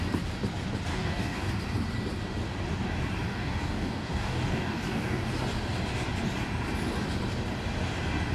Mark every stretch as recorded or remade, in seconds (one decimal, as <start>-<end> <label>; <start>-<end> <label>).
0.0-0.9 recorded; 0.9-1.5 remade; 1.5-3.3 recorded; 3.3-5.3 remade; 5.3-8.3 recorded